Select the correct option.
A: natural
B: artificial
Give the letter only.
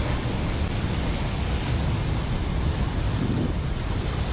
A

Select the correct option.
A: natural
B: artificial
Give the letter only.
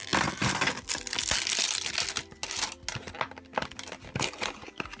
A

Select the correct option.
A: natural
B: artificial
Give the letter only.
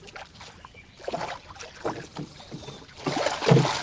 A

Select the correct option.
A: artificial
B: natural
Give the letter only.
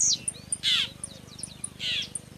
B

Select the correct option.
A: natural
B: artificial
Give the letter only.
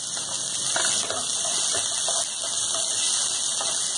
A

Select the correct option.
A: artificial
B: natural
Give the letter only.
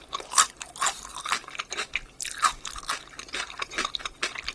B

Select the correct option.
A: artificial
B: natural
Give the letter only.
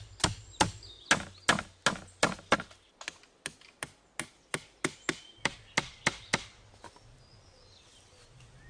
B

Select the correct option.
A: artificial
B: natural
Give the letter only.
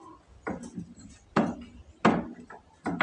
B